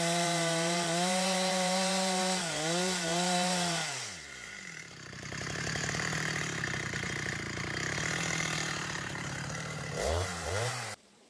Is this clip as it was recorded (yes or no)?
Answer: no